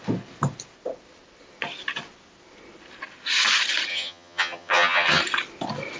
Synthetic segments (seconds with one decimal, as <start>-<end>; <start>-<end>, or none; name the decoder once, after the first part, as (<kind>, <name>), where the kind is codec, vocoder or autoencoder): 3.9-5.2 (vocoder, HiFi-GAN)